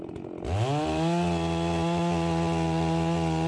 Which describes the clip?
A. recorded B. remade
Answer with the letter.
A